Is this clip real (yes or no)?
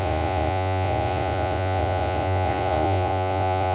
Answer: no